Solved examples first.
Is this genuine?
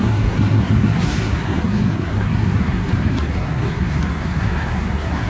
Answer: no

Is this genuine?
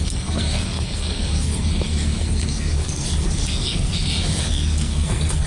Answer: no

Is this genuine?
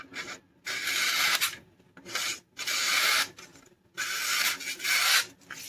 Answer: yes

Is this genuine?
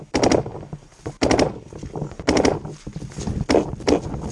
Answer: yes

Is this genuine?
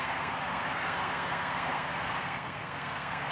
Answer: no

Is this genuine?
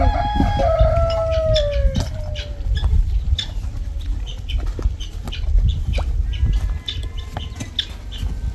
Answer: yes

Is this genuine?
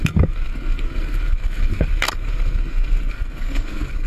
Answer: no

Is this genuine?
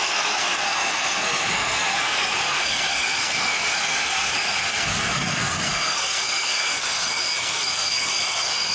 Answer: no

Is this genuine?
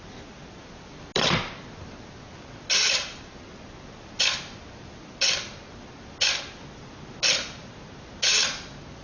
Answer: yes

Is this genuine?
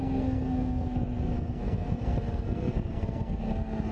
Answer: no